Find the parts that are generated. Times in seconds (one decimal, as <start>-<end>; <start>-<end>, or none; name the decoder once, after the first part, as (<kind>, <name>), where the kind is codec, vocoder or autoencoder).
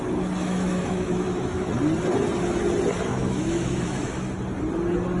0.4-1.7 (autoencoder, DAC-VAE); 3.1-4.2